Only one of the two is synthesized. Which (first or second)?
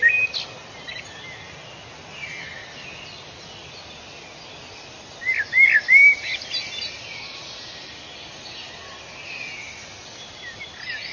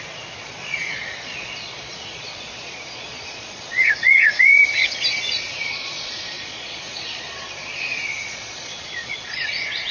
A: second